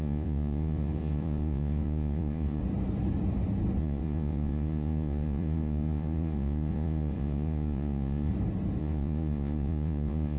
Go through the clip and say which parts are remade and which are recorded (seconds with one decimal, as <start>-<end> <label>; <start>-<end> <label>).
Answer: 0.0-2.6 remade; 2.6-3.8 recorded; 3.8-8.3 remade; 8.3-8.8 recorded; 8.8-10.4 remade